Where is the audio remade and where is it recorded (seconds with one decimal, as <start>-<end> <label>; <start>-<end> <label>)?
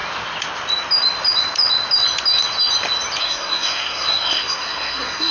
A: 0.0-3.2 recorded; 3.2-5.3 remade